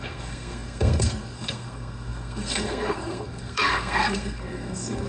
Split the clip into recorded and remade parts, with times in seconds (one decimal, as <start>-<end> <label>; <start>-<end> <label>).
0.0-5.1 remade

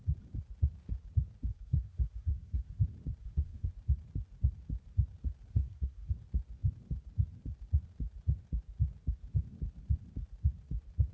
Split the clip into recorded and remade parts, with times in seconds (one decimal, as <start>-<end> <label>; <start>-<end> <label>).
0.0-1.5 recorded; 1.5-2.8 remade; 2.8-3.2 recorded; 3.2-3.7 remade; 3.7-5.5 recorded; 5.5-6.1 remade; 6.1-11.1 recorded

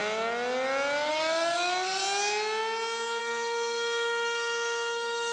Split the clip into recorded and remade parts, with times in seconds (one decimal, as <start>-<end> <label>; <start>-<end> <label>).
0.0-1.1 recorded; 1.1-2.0 remade; 2.0-3.2 recorded; 3.2-5.3 remade

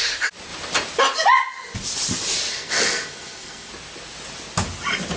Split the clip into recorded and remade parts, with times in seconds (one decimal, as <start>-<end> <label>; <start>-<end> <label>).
0.0-2.5 recorded; 2.5-3.7 remade; 3.7-5.2 recorded

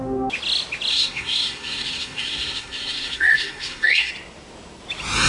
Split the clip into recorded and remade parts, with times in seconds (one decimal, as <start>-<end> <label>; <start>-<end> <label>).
0.0-0.9 recorded; 0.9-4.1 remade; 4.1-5.3 recorded

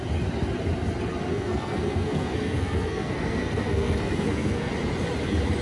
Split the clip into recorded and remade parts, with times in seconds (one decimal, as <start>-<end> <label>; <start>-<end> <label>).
0.0-1.3 recorded; 1.3-4.7 remade; 4.7-5.6 recorded